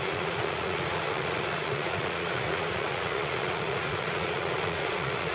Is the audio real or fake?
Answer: fake